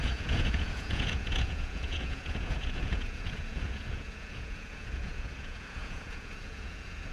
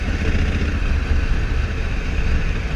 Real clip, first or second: second